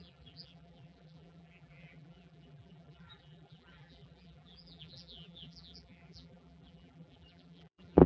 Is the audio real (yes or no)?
no